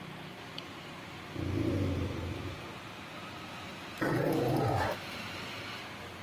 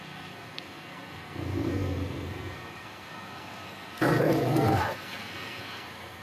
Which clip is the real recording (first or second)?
first